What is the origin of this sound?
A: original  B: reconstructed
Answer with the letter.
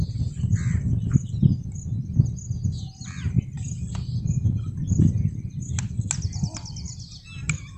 A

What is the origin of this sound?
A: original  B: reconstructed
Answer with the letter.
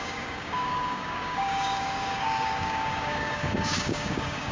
B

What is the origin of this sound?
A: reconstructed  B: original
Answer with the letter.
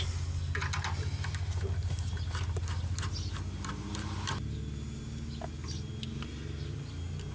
B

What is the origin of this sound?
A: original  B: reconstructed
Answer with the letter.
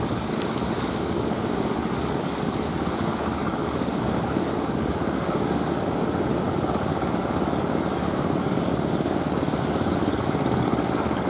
B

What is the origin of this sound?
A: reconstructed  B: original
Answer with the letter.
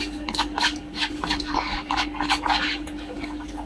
A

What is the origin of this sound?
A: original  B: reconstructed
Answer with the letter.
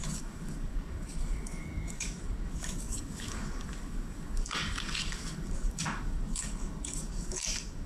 B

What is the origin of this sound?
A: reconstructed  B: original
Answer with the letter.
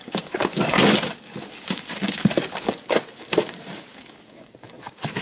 A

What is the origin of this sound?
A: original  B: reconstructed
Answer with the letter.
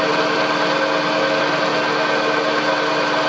A